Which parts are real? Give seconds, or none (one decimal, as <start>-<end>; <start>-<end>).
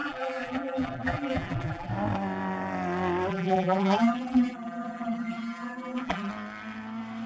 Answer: 1.9-3.3; 6.3-7.3